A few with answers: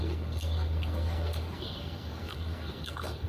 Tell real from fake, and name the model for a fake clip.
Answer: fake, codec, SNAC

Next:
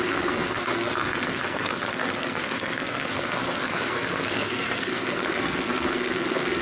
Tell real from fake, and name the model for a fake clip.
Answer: fake, codec, SNAC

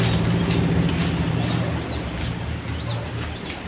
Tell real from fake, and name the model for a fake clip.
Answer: real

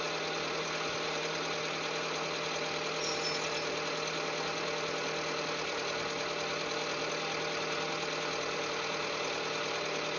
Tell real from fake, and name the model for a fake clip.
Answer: real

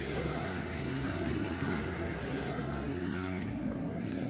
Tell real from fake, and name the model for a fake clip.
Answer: fake, codec, SNAC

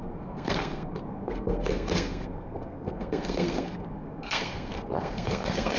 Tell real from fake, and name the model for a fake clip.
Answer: fake, codec, SNAC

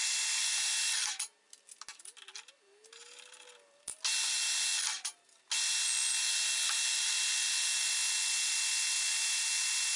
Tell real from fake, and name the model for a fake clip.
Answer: real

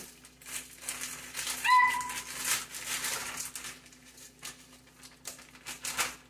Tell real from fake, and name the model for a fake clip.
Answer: real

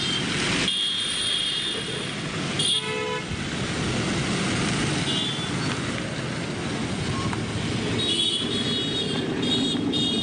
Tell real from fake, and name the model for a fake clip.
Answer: real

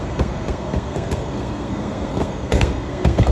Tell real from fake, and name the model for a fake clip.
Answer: fake, codec, SNAC